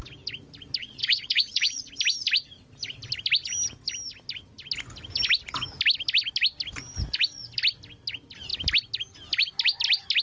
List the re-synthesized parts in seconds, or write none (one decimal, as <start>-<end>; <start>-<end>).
0.8-1.9